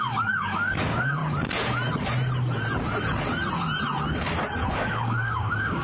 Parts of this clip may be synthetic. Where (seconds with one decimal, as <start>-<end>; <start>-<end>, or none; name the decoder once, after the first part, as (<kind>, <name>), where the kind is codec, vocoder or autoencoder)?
0.0-1.2 (codec, DAC); 4.7-5.8